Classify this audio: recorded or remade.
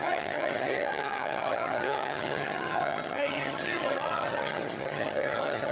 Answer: remade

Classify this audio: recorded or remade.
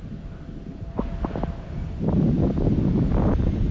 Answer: recorded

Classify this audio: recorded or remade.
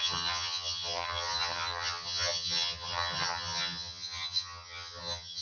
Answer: remade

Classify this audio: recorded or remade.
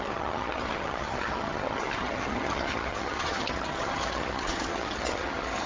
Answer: remade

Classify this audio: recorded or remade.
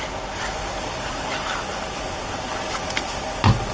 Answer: recorded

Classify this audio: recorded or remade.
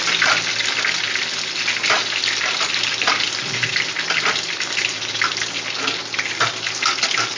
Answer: recorded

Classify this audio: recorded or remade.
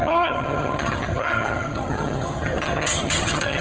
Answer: remade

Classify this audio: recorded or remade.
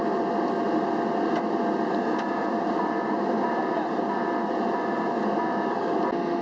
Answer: recorded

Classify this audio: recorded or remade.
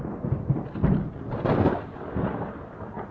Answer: recorded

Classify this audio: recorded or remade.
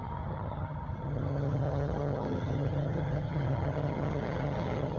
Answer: remade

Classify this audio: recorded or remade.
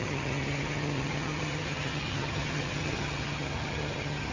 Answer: remade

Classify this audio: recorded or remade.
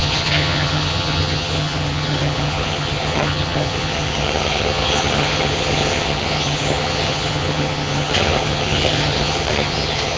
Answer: remade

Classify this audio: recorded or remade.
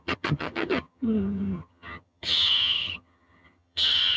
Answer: remade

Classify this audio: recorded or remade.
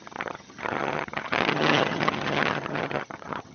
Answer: remade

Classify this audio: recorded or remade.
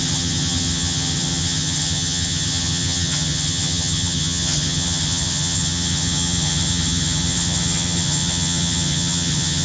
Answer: remade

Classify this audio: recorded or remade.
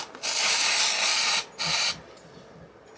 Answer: recorded